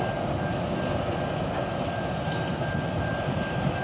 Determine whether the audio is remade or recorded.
recorded